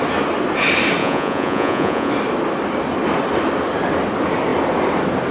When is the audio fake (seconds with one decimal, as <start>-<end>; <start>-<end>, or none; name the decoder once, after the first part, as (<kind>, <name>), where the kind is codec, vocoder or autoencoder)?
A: 1.0-2.1 (vocoder, Vocos)